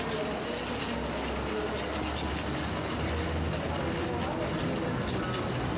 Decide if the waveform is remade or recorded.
recorded